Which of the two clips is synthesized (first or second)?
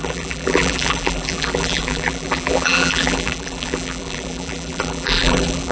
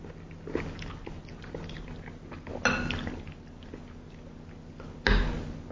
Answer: first